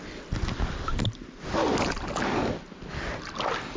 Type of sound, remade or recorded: recorded